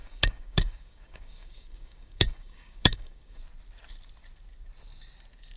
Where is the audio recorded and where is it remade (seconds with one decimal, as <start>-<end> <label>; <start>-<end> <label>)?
0.0-3.4 remade; 3.4-5.6 recorded